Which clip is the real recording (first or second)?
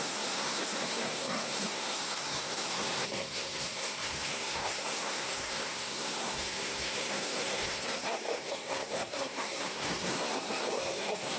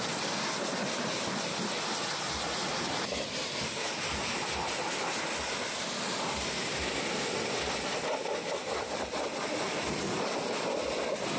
second